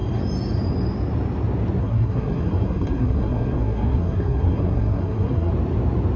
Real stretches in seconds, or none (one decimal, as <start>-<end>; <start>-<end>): 0.0-1.8; 5.5-6.2